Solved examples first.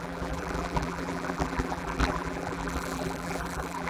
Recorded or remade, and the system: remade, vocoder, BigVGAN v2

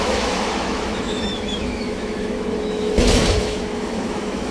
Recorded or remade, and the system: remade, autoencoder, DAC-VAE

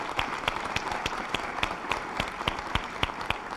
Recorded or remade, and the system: remade, vocoder, BigVGAN v2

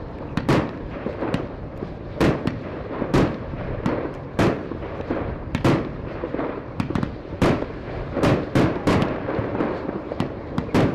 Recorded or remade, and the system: remade, vocoder, BigVGAN v2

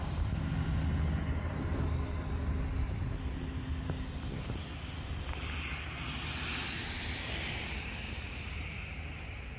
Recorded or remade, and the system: recorded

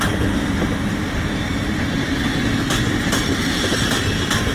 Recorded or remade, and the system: recorded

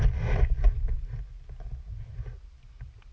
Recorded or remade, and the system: recorded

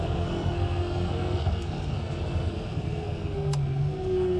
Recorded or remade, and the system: remade, codec, SNAC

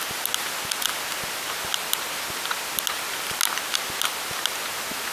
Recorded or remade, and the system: recorded